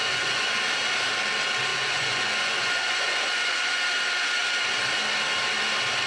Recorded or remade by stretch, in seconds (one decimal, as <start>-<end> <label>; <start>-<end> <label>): 0.0-0.6 remade; 0.6-1.7 recorded; 1.7-3.8 remade; 3.8-6.1 recorded